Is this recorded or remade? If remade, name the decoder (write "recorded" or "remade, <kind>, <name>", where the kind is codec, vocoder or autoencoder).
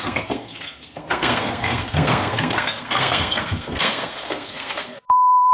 remade, codec, SNAC